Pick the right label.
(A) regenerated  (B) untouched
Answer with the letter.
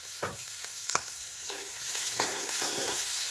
A